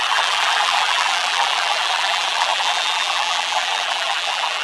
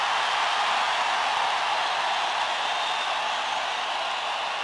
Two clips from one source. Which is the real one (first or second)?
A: second